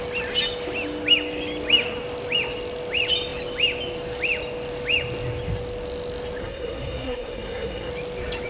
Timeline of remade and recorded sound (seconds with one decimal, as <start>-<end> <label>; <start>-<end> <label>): 0.0-6.4 recorded; 6.4-7.9 remade; 7.9-8.5 recorded